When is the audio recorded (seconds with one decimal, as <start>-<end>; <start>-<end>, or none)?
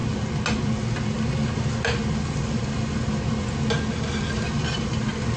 0.0-5.4